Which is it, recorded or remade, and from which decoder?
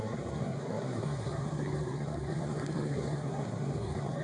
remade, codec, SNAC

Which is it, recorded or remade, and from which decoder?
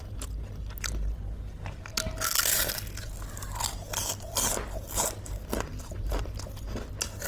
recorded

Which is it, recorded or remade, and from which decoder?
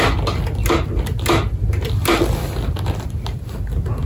recorded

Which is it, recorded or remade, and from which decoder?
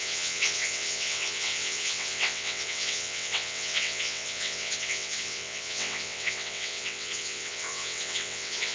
remade, vocoder, WaveNeXt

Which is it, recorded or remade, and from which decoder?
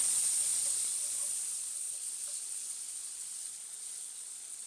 recorded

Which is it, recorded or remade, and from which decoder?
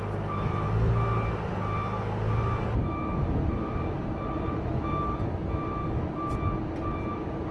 recorded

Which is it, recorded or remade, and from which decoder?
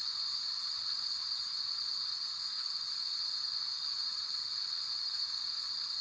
recorded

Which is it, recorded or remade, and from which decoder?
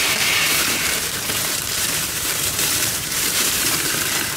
remade, vocoder, BigVGAN v2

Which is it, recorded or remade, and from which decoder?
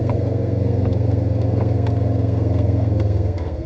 remade, codec, SNAC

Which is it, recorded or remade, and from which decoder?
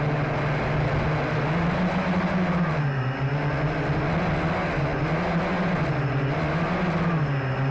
recorded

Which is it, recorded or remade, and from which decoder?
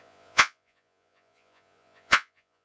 remade, vocoder, Vocos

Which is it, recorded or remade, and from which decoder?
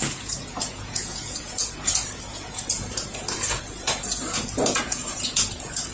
remade, vocoder, Vocos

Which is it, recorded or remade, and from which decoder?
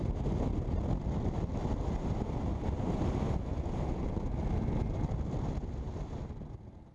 recorded